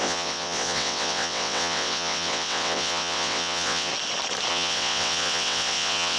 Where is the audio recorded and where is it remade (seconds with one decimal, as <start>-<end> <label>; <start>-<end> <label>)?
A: 0.0-3.9 remade; 3.9-4.5 recorded; 4.5-6.2 remade